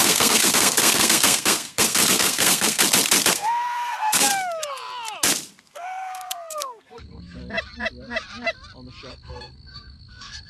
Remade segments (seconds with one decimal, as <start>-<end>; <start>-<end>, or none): 0.0-2.8; 3.3-4.3; 5.6-7.4; 9.1-10.5